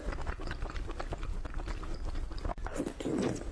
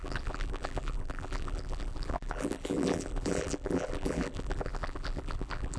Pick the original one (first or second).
first